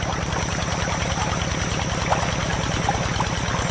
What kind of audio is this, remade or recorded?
recorded